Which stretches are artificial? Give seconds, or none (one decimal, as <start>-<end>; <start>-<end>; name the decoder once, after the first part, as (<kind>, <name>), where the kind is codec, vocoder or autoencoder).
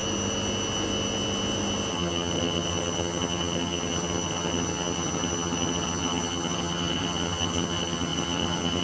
1.9-8.8 (vocoder, HiFi-GAN)